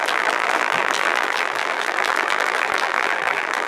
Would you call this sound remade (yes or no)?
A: yes